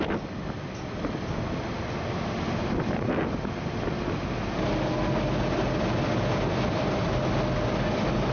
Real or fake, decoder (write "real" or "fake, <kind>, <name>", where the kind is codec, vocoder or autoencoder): real